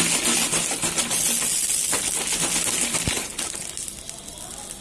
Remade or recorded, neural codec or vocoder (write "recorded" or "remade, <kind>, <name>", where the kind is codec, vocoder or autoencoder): recorded